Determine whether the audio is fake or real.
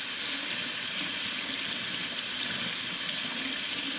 real